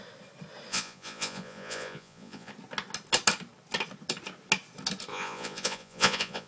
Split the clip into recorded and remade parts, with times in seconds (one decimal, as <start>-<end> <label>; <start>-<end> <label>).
0.0-0.7 recorded; 0.7-2.5 remade; 2.5-5.1 recorded; 5.1-6.5 remade